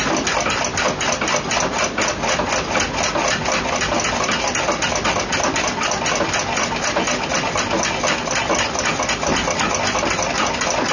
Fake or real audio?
real